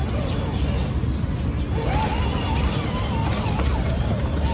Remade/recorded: recorded